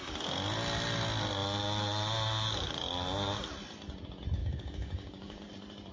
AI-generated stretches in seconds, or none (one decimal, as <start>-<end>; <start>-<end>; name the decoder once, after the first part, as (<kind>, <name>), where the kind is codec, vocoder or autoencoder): 4.4-5.5 (codec, DAC)